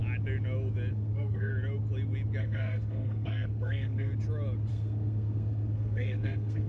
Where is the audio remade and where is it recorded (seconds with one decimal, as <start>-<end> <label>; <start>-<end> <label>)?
0.0-0.9 recorded; 0.9-1.5 remade; 1.5-2.4 recorded; 2.4-4.1 remade; 4.1-4.7 recorded; 4.7-6.7 remade